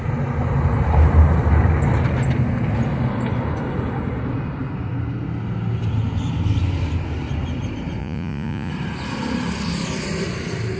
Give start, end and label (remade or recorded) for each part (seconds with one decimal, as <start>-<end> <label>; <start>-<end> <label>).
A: 0.0-8.0 recorded; 8.0-8.7 remade; 8.7-10.8 recorded